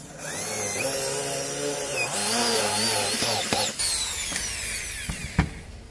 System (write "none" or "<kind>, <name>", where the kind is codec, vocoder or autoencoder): none